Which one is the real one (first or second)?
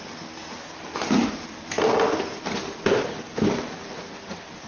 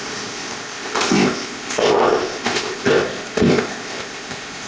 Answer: first